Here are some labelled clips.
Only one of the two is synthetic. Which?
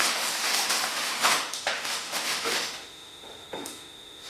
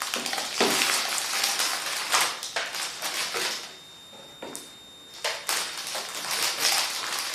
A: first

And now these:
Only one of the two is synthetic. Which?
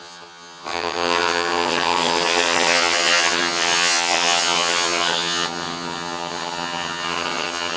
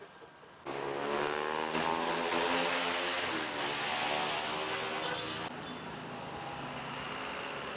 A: first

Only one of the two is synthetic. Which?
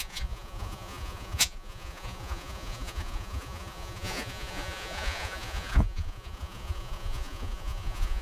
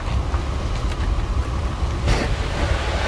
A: first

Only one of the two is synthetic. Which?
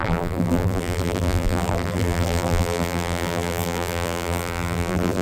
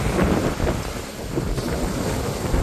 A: first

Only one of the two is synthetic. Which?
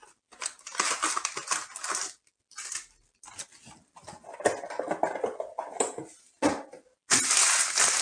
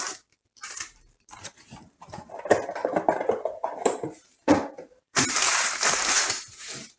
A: second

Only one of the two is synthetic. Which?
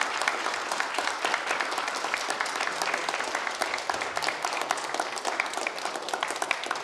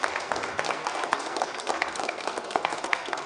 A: second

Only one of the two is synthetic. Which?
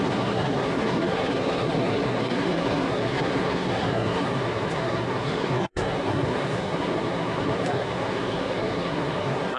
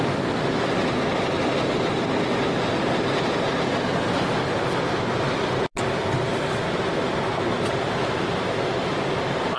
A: first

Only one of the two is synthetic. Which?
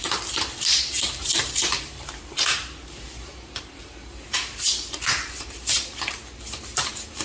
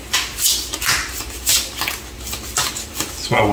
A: first